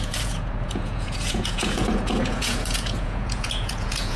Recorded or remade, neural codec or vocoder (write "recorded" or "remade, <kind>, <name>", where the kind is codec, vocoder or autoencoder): remade, vocoder, Vocos